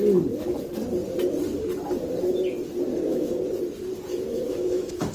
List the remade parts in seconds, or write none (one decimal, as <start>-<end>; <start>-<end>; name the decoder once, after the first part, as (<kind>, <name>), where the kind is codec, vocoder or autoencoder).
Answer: 2.9-3.4 (autoencoder, DAC-VAE); 4.1-5.1